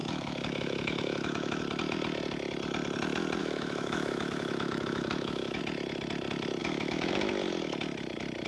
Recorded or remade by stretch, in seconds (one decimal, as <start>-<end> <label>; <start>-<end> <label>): 0.0-1.6 remade; 1.6-3.4 recorded; 3.4-5.6 remade; 5.6-6.6 recorded; 6.6-7.3 remade; 7.3-8.5 recorded